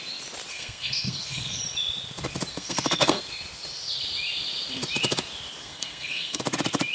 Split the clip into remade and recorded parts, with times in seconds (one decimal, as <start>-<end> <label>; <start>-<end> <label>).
0.0-0.5 recorded; 0.5-1.6 remade; 1.6-2.5 recorded; 2.5-3.2 remade; 3.2-5.6 recorded; 5.6-6.4 remade; 6.4-6.9 recorded